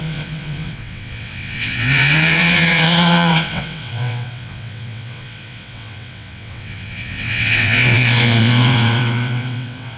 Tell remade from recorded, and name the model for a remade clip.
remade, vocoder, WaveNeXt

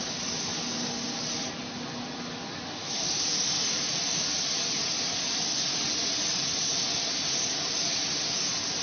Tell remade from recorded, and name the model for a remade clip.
recorded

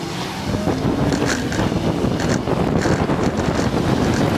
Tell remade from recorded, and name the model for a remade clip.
recorded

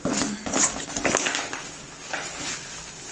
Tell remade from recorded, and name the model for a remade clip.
recorded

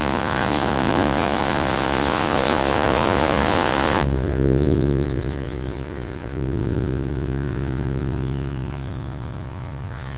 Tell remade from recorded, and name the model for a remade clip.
remade, vocoder, Vocos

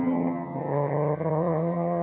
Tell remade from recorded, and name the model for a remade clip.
remade, vocoder, HiFi-GAN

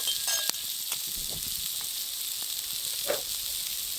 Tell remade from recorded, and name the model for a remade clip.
recorded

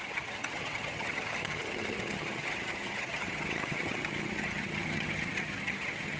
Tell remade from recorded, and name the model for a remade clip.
remade, vocoder, HiFi-GAN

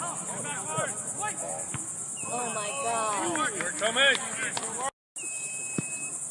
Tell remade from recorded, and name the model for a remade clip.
recorded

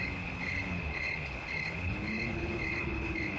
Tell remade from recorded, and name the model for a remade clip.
remade, codec, HILCodec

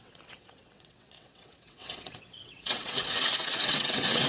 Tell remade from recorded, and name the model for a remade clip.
remade, vocoder, WaveNeXt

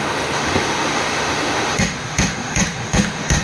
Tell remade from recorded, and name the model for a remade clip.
remade, autoencoder, DAC-VAE